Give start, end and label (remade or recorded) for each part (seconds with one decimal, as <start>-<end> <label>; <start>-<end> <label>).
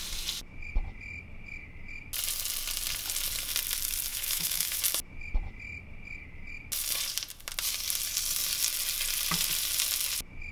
0.0-4.1 recorded; 4.1-4.8 remade; 4.8-10.5 recorded